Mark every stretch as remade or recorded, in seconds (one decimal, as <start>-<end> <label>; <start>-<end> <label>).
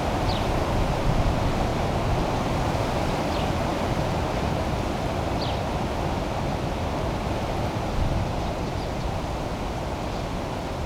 0.0-10.9 recorded